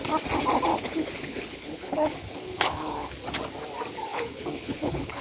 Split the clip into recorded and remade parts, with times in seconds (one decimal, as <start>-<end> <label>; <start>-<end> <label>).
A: 0.0-0.7 recorded; 0.7-3.1 remade; 3.1-4.0 recorded; 4.0-5.2 remade